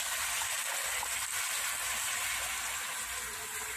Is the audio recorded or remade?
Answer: recorded